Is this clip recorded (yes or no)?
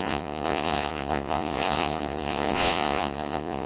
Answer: no